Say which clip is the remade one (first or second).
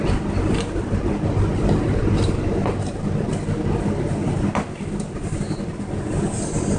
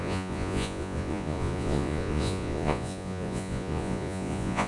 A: second